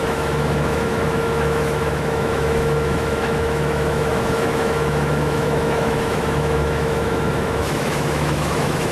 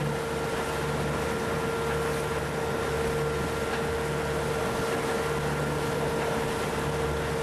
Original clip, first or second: second